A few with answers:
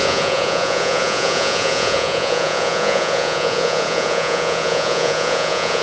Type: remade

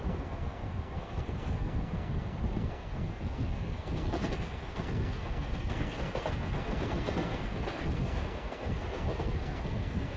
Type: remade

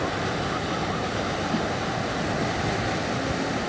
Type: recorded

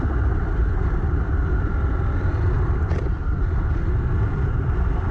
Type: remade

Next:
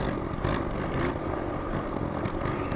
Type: recorded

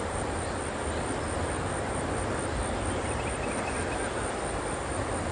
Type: recorded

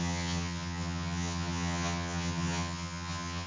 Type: remade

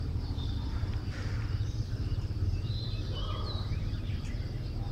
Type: remade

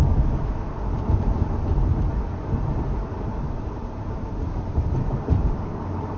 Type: remade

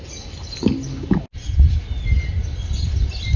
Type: recorded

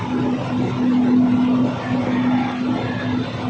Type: recorded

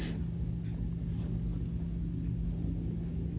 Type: recorded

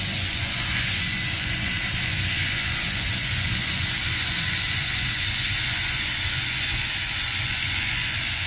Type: remade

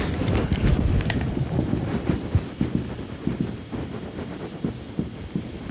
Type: recorded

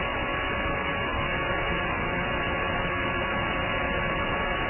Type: recorded